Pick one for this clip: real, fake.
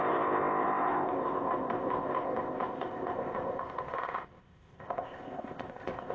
fake